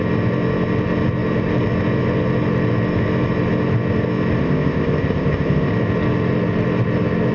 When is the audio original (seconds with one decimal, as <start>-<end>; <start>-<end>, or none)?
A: 0.0-4.4; 5.7-7.3